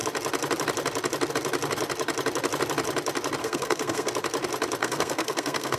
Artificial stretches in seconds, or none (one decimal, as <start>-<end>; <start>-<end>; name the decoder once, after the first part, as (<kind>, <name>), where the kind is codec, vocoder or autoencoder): 3.4-4.1 (codec, SNAC); 4.8-5.8